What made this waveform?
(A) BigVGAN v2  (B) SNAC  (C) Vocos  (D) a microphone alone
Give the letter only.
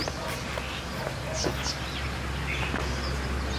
D